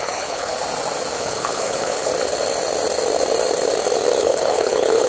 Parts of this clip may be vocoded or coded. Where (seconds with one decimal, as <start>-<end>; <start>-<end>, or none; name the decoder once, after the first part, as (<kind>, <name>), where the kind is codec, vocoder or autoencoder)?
0.0-0.5 (codec, HILCodec); 1.2-2.1; 4.2-5.1